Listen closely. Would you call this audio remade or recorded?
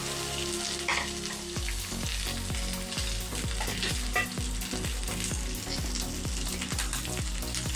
recorded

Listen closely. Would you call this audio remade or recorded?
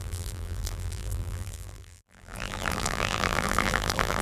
remade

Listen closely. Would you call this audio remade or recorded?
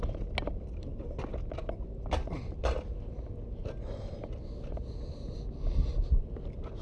recorded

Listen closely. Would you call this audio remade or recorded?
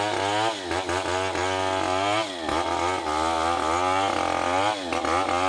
recorded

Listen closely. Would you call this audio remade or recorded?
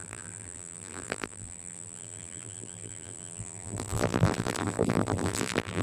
remade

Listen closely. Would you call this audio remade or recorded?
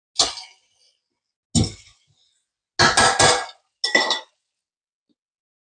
recorded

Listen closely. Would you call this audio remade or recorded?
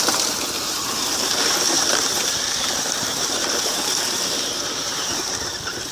remade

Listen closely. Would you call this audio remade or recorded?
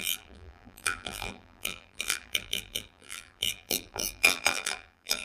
remade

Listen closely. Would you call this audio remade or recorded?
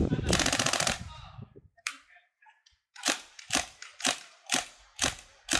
remade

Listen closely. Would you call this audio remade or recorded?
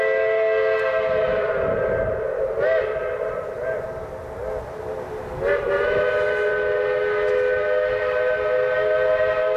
recorded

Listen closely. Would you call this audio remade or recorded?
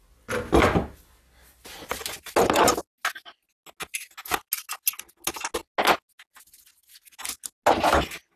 recorded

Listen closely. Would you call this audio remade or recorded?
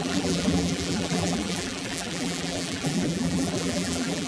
remade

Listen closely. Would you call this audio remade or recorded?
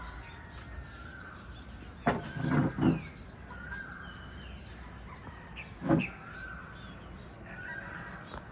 recorded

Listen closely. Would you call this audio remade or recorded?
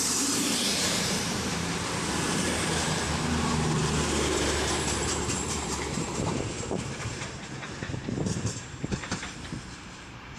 remade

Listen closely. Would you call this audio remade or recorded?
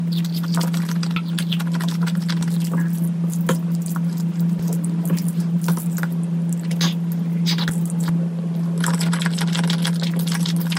recorded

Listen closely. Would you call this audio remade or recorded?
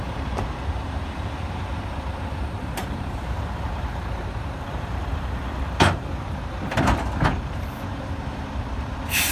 remade